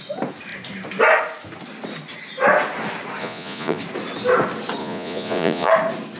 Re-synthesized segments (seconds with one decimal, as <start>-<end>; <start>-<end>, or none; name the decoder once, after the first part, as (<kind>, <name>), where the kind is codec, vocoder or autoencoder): 3.2-3.8 (vocoder, Vocos); 4.8-5.7